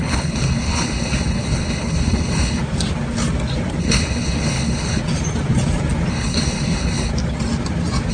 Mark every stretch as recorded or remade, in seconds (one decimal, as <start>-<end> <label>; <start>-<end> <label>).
0.0-2.6 remade; 2.6-3.8 recorded; 3.8-5.0 remade; 5.0-6.1 recorded; 6.1-7.1 remade; 7.1-8.1 recorded